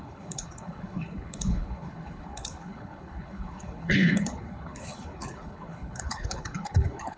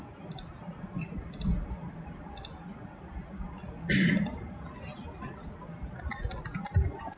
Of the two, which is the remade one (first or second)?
first